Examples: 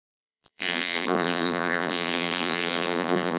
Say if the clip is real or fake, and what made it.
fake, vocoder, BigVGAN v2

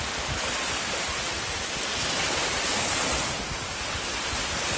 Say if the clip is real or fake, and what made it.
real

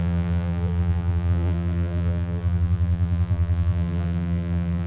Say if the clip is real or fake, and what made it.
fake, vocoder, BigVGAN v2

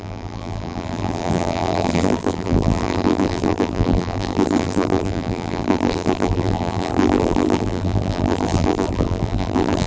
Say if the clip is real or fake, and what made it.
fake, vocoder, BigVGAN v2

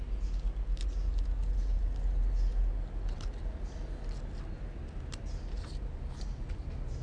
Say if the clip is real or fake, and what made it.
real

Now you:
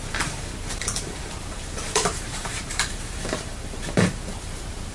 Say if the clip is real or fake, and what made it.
fake, vocoder, BigVGAN v2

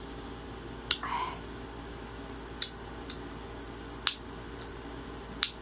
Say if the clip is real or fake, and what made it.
real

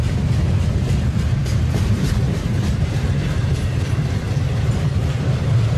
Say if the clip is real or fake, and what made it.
fake, vocoder, BigVGAN v2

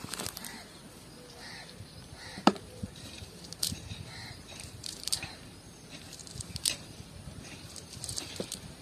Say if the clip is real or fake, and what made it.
fake, vocoder, BigVGAN v2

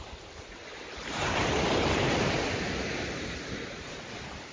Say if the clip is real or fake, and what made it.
fake, vocoder, BigVGAN v2